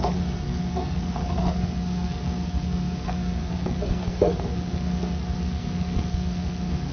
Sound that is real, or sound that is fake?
fake